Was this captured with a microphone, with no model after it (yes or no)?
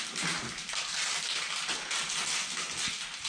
yes